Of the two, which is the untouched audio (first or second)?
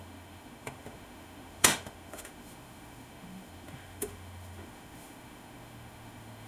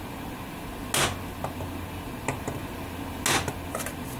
second